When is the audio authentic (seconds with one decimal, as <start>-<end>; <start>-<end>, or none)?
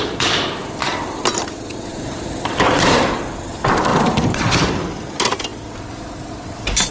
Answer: 0.0-1.9; 3.1-3.9; 5.0-6.9